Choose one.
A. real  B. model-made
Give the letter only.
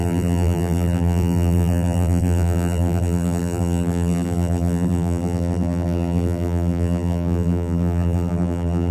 B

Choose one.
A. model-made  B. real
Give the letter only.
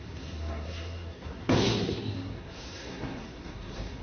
A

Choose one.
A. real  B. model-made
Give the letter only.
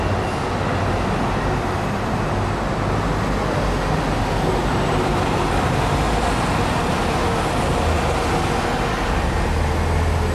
A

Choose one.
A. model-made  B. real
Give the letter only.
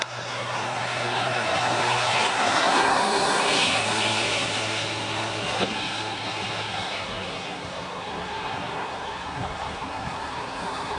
A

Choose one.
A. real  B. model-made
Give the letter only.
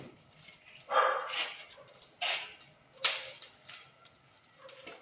A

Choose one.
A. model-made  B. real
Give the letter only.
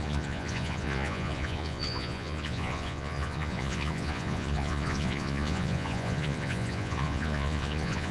A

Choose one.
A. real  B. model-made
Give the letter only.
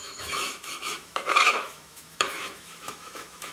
B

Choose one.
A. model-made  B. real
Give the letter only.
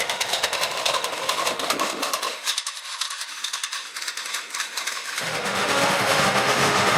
A